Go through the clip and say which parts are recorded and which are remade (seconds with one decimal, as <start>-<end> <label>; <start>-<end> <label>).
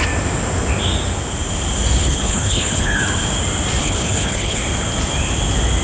0.0-2.0 recorded; 2.0-3.0 remade; 3.0-3.8 recorded; 3.8-4.6 remade; 4.6-5.8 recorded